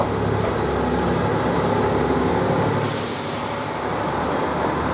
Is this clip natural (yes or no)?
yes